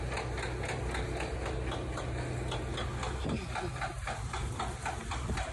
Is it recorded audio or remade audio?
recorded